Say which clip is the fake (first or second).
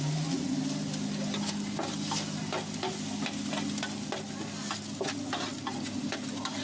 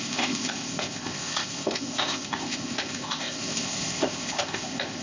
second